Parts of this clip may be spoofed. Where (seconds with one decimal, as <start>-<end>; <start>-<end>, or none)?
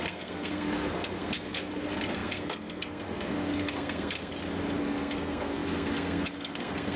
0.0-4.3; 4.8-7.0